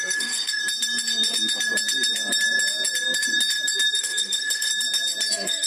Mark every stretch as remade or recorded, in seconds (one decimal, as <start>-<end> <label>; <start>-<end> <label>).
0.0-0.6 remade; 0.6-4.0 recorded; 4.0-4.7 remade; 4.7-5.3 recorded; 5.3-5.7 remade